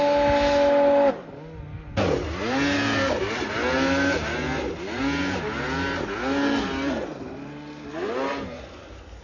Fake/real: real